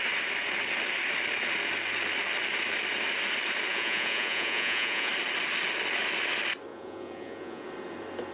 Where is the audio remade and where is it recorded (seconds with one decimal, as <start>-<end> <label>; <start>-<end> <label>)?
0.0-3.7 recorded; 3.7-5.1 remade; 5.1-6.7 recorded; 6.7-7.7 remade; 7.7-8.3 recorded